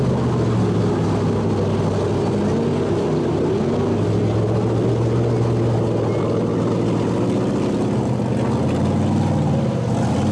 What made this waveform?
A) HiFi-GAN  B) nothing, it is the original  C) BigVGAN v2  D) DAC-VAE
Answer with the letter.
B